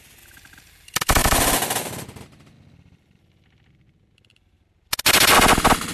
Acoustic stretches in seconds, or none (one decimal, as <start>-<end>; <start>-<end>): 0.0-1.2; 4.7-5.9